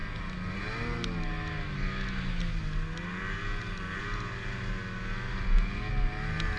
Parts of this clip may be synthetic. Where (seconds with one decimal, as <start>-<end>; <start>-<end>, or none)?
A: none